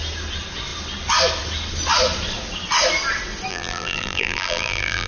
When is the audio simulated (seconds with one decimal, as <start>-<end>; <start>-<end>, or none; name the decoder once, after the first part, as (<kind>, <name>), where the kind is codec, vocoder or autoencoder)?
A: 3.5-5.1 (vocoder, BigVGAN v2)